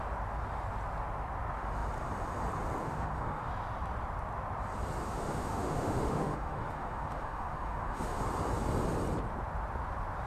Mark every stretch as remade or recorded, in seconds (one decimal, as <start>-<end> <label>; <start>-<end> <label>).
0.0-2.8 recorded; 2.8-3.5 remade; 3.5-5.0 recorded; 5.0-8.2 remade; 8.2-10.3 recorded